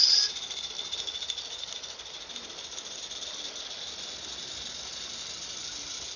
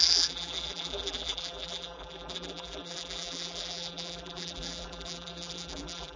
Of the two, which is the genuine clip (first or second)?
first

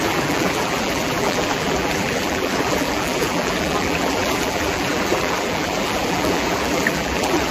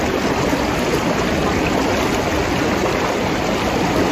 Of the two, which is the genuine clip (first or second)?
second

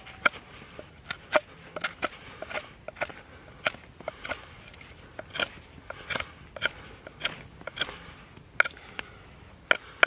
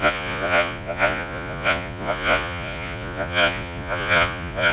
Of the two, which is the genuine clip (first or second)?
first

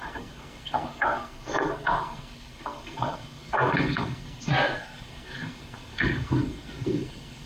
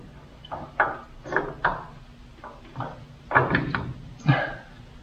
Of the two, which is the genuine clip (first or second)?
second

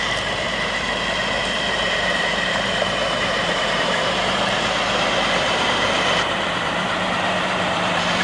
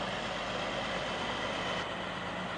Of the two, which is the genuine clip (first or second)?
second